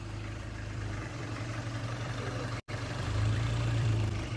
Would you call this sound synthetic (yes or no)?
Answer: yes